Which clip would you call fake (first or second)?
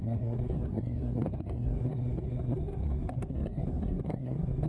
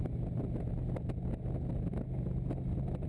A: first